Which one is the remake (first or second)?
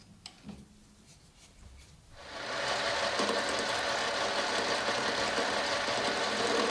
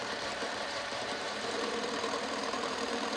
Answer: second